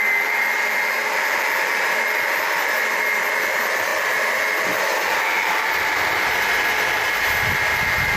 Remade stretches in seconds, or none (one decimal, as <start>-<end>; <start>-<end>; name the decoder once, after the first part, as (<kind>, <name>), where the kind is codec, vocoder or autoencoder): 0.0-1.0 (vocoder, BigVGAN v2); 3.5-3.9; 4.8-8.2